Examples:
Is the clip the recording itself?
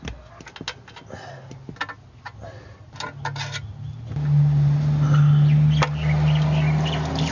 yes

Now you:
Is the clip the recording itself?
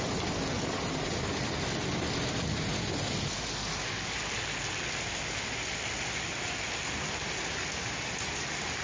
yes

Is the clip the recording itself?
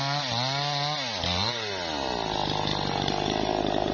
yes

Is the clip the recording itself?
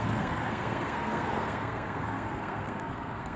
no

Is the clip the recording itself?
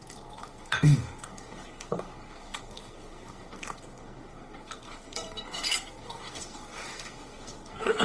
no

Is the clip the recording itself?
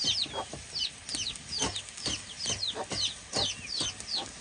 yes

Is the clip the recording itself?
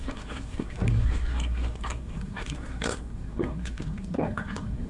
no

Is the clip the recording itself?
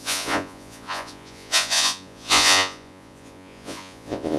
no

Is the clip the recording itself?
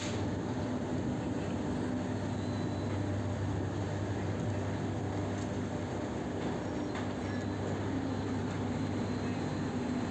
yes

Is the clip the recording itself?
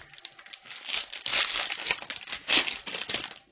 yes